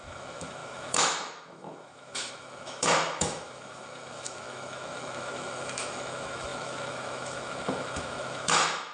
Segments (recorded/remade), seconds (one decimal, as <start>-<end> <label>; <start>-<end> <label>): 0.0-8.9 remade